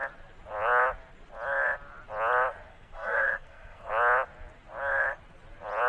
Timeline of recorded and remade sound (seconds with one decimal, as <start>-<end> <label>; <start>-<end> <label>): 0.0-2.7 recorded; 2.7-3.9 remade; 3.9-5.9 recorded